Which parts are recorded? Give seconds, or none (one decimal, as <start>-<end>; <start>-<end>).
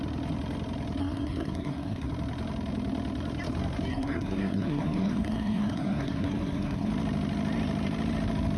0.0-1.0; 2.1-3.9; 6.9-8.6